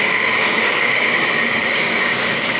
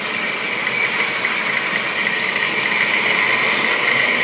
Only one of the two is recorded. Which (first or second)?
second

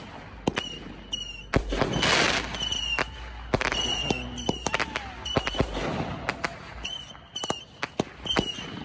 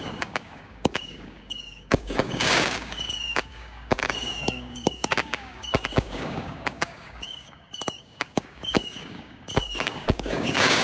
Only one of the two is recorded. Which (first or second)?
first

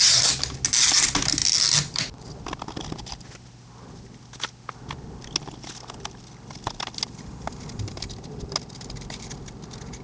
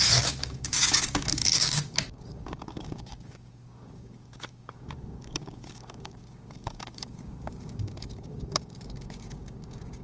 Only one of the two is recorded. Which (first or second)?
first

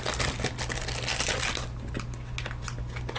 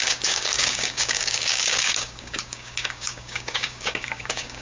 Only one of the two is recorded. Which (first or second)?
first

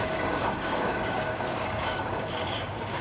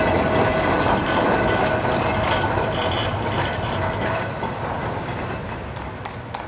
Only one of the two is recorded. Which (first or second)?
second